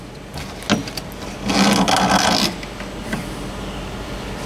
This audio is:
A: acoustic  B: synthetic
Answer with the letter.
A